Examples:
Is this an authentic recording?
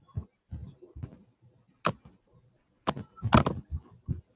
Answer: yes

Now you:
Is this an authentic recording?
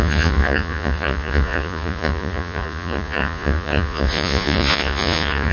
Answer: no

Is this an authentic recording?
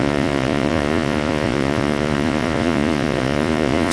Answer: no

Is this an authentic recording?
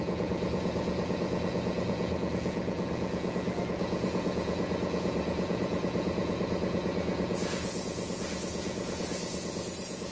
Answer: no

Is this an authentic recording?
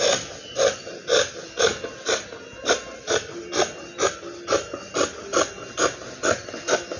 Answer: yes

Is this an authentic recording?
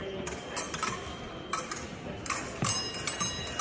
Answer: yes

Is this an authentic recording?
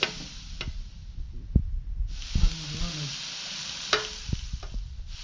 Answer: yes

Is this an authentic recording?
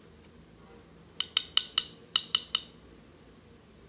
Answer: yes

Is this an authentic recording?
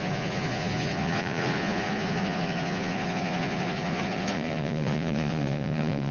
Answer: no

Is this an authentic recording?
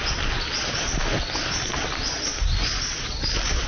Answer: yes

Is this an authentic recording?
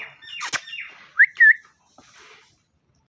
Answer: yes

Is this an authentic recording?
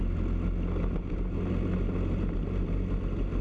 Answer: yes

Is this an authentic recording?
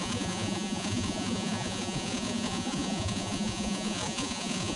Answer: no